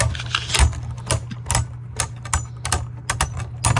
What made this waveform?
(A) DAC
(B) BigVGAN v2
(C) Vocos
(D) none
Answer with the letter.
D